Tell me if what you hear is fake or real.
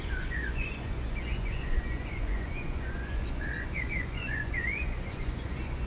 fake